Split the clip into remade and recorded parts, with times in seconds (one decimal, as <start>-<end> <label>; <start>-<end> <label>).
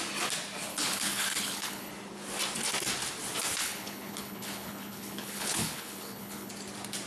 0.0-0.7 recorded; 0.7-1.9 remade; 1.9-3.6 recorded; 3.6-6.5 remade; 6.5-7.1 recorded